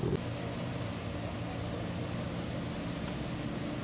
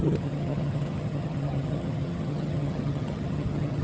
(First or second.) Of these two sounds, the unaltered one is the first